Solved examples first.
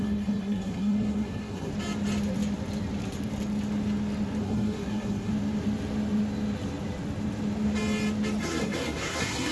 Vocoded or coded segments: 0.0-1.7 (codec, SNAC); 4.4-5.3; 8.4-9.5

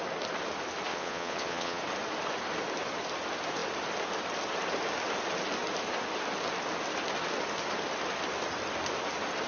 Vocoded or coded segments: 0.9-1.8 (vocoder, Vocos)

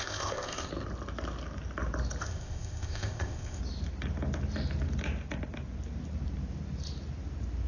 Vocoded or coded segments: 0.0-0.7 (codec, ZipCodec); 2.2-3.6

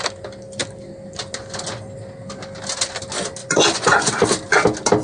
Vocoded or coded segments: 3.4-4.1 (vocoder, Vocos)

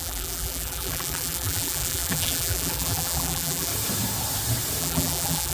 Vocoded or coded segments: 0.0-3.7 (vocoder, BigVGAN v2); 4.8-5.5

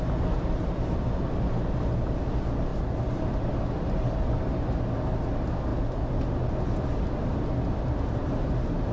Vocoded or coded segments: none

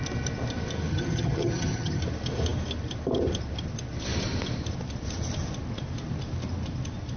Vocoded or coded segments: 0.9-2.0 (vocoder, HiFi-GAN)

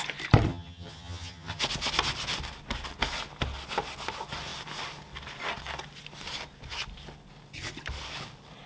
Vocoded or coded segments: 0.5-1.6 (vocoder, HiFi-GAN)